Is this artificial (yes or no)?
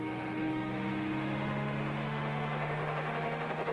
yes